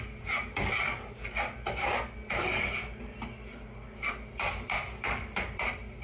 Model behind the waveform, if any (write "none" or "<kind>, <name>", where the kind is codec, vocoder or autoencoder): none